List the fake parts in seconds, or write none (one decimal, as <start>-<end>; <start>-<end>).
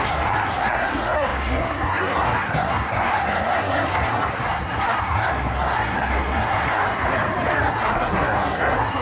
0.0-6.8; 7.7-9.0